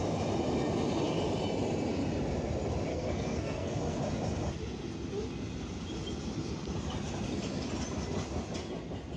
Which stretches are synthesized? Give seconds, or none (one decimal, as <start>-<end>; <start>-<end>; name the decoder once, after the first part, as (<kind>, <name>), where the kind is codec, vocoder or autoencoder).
2.9-4.0 (codec, SNAC)